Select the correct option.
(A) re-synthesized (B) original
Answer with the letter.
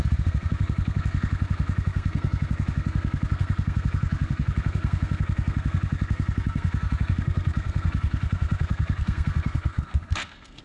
A